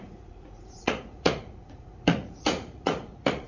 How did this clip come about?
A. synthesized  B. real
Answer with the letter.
A